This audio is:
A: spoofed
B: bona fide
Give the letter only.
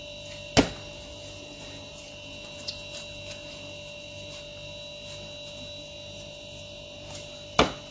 B